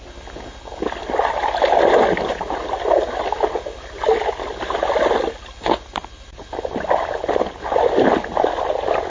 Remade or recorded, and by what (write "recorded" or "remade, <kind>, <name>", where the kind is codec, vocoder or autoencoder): recorded